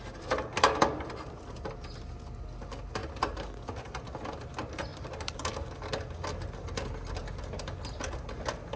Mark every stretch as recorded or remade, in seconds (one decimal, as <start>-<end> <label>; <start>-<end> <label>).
0.0-4.9 recorded; 4.9-5.7 remade; 5.7-8.8 recorded